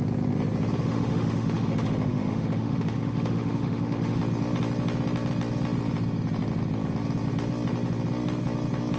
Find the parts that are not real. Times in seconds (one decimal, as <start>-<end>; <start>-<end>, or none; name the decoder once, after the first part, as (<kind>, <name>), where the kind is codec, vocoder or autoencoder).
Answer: 0.8-4.2 (autoencoder, DAC-VAE)